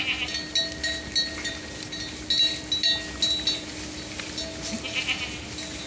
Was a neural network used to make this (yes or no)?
no